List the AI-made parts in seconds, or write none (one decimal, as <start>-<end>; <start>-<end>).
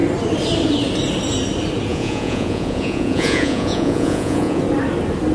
1.9-4.6